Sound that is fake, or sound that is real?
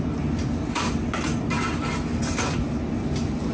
real